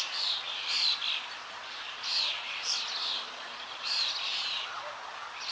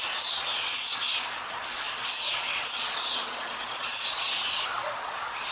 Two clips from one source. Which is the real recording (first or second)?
first